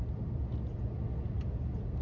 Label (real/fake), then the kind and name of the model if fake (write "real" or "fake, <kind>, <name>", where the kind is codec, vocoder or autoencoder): real